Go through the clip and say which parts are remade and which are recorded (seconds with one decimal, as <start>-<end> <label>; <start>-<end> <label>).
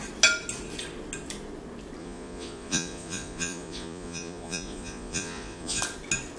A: 0.0-2.0 recorded; 2.0-5.8 remade; 5.8-6.4 recorded